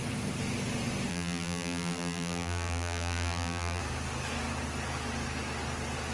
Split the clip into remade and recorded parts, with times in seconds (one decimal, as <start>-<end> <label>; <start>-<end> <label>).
0.0-1.1 recorded; 1.1-3.8 remade; 3.8-6.1 recorded